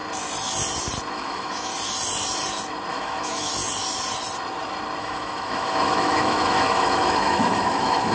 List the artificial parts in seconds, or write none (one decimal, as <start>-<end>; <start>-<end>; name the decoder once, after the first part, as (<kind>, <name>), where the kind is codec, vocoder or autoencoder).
1.1-1.7 (autoencoder, DAC-VAE); 2.9-3.5; 5.0-8.1